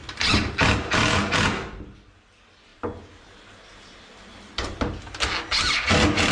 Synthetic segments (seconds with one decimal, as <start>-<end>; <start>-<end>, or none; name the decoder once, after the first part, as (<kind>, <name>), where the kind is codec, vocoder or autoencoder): none